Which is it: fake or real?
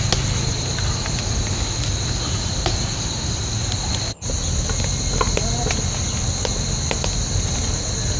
real